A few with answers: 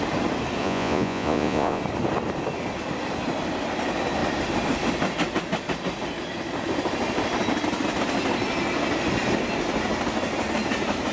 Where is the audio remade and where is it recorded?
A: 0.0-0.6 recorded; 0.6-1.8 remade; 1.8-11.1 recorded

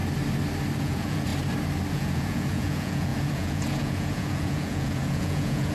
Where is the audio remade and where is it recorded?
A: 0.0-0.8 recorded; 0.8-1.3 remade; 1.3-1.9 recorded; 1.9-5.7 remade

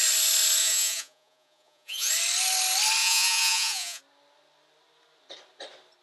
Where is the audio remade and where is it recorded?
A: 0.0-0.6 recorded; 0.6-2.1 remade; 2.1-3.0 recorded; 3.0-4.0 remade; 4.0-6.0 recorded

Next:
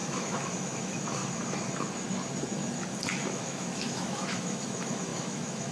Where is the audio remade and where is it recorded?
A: 0.0-1.2 remade; 1.2-3.3 recorded; 3.3-5.7 remade

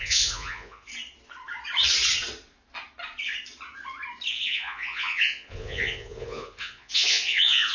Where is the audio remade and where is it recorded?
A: 0.0-0.9 remade; 0.9-4.3 recorded; 4.3-7.7 remade